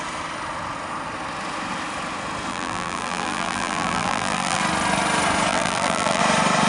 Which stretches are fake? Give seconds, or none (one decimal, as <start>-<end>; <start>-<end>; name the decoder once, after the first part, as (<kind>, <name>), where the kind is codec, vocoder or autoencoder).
2.5-4.6 (vocoder, BigVGAN v2); 5.5-6.2